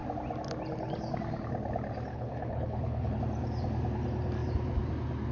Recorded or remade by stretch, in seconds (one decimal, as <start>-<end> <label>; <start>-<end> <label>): 0.0-2.1 recorded; 2.1-3.2 remade; 3.2-5.3 recorded